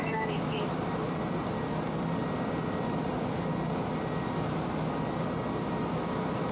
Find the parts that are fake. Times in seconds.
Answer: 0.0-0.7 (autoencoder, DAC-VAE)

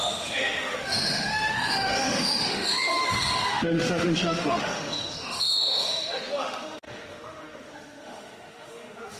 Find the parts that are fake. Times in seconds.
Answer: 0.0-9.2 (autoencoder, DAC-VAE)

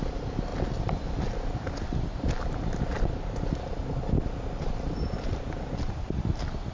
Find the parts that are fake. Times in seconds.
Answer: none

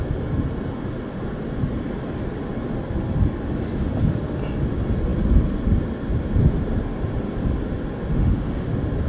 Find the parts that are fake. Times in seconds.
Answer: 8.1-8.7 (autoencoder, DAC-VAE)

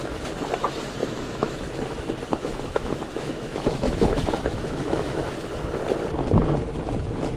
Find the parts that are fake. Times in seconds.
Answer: 1.0-1.7 (autoencoder, DAC-VAE); 2.3-5.3